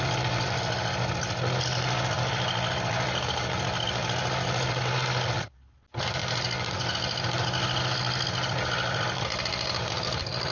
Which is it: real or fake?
real